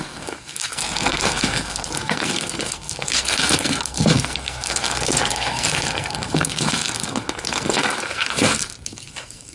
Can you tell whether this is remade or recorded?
remade